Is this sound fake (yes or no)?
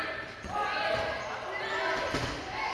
no